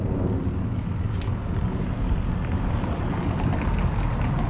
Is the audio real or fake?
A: real